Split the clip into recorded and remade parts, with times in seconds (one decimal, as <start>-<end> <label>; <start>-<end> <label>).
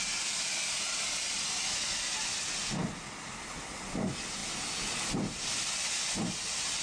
0.0-6.8 recorded